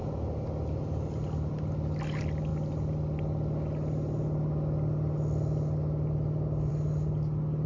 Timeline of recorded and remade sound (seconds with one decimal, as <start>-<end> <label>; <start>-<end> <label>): 0.0-7.7 recorded